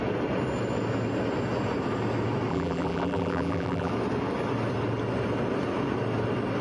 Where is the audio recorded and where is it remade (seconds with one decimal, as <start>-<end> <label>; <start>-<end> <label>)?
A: 0.0-2.5 recorded; 2.5-3.9 remade; 3.9-6.6 recorded